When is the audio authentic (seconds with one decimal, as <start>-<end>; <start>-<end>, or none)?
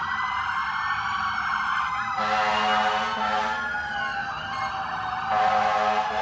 0.0-6.2